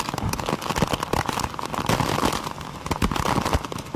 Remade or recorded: recorded